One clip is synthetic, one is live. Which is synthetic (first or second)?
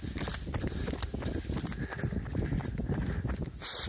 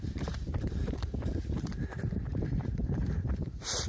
second